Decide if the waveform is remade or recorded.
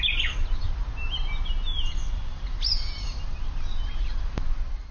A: recorded